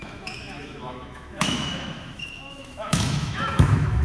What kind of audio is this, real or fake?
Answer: fake